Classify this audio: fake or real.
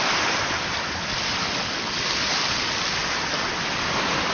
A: real